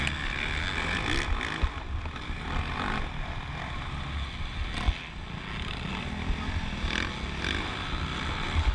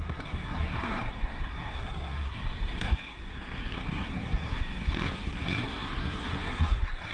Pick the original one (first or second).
first